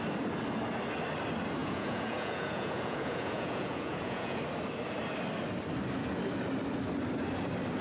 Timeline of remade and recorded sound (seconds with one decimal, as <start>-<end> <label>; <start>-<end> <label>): 0.0-1.6 recorded; 1.6-4.4 remade; 4.4-7.8 recorded